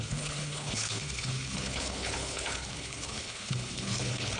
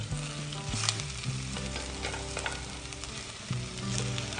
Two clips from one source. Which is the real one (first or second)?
second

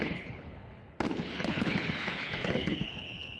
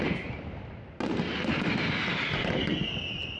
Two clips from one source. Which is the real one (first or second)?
second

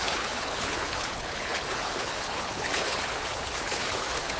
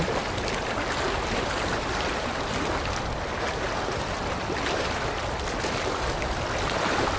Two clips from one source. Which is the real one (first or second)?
second